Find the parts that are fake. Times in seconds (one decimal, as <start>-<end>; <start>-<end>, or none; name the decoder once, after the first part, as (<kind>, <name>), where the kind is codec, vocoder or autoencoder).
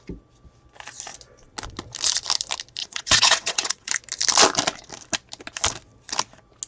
2.8-3.9 (vocoder, WaveNeXt)